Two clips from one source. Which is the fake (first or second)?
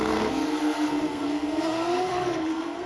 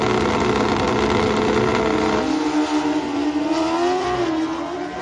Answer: first